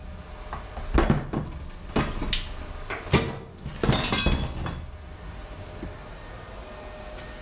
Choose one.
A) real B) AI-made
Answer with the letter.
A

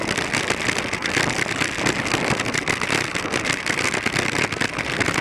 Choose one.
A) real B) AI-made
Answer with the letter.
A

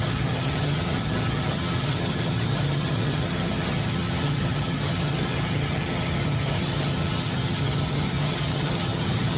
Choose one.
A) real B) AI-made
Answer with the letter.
B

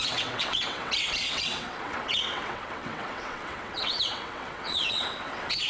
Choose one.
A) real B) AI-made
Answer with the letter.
B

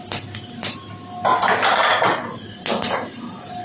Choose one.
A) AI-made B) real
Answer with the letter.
B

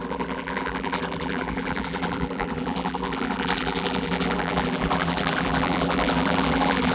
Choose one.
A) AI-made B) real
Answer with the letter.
A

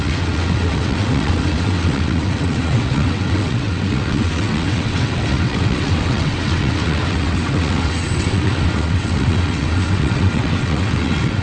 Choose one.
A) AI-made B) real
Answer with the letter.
A